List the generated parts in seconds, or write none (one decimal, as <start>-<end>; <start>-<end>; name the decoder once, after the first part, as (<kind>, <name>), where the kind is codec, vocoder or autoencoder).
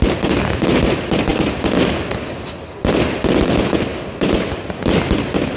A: none